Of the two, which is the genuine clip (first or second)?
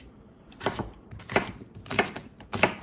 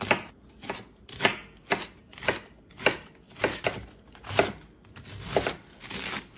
second